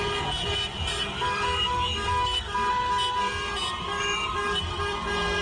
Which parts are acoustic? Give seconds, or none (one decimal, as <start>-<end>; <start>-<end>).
0.0-0.9; 2.7-3.9; 4.6-5.4